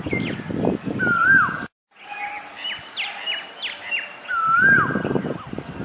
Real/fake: real